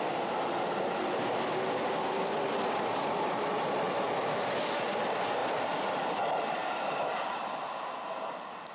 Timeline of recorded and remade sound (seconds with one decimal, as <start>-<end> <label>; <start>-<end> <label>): 0.0-5.4 recorded; 5.4-6.0 remade; 6.0-6.6 recorded; 6.6-7.6 remade; 7.6-8.7 recorded